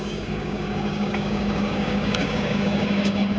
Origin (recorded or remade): remade